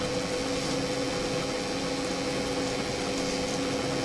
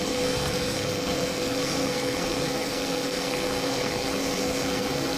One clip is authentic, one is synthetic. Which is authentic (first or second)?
first